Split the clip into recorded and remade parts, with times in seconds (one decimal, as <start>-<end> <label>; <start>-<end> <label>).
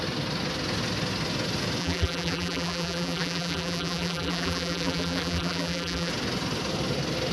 0.0-1.8 recorded; 1.8-6.1 remade; 6.1-7.3 recorded